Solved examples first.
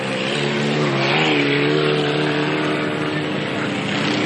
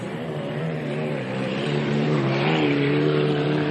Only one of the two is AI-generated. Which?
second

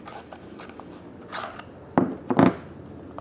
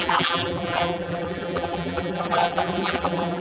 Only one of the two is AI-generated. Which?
second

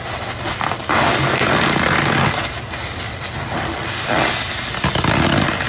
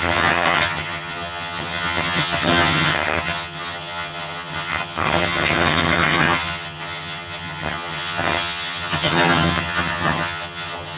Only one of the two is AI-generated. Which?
second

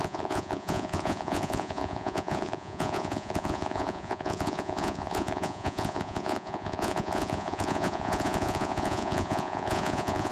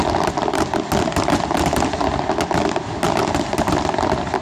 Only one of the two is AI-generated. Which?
first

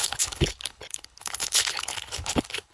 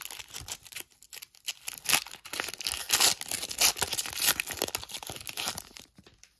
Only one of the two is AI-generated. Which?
first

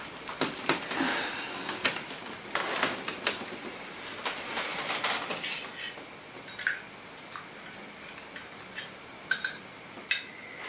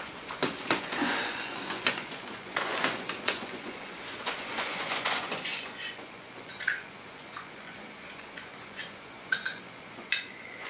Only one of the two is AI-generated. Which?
second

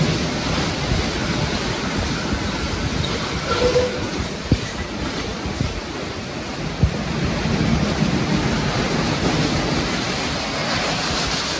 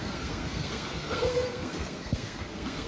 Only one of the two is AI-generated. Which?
second